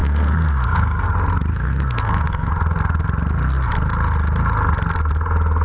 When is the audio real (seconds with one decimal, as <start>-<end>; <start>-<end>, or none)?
1.1-1.5; 2.5-5.6

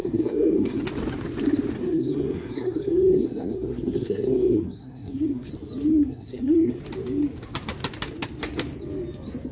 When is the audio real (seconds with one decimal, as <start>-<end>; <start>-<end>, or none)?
0.8-1.8; 5.5-5.9; 6.8-9.5

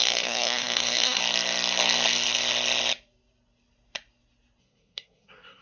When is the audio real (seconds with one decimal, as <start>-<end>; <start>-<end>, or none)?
1.2-4.6

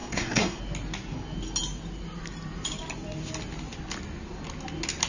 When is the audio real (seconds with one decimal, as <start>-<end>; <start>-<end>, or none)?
0.6-5.1

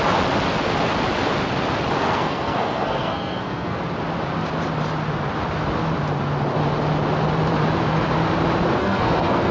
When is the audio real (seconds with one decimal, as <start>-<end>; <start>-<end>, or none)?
0.0-2.0; 3.8-8.8

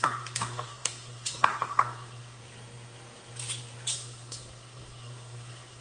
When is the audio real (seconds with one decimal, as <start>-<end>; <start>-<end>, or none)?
2.4-3.9

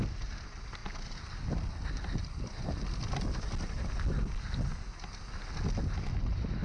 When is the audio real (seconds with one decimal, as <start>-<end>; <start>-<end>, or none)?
0.0-6.6